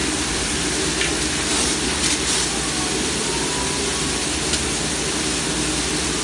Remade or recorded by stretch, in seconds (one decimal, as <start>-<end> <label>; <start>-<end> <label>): 0.0-6.2 recorded